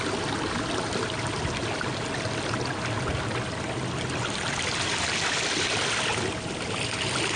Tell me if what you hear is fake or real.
real